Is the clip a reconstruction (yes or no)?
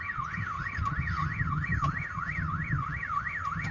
yes